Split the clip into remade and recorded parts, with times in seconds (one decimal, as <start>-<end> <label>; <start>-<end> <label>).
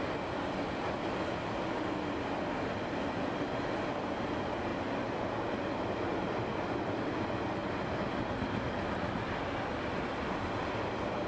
0.0-11.3 recorded